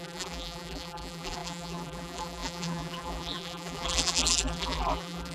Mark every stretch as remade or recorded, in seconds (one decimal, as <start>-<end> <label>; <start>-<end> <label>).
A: 0.0-5.3 remade